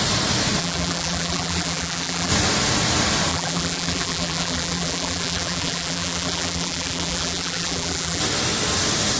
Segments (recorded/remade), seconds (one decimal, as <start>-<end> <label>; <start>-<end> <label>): 0.0-0.6 recorded; 0.6-2.3 remade; 2.3-3.3 recorded; 3.3-8.2 remade; 8.2-9.2 recorded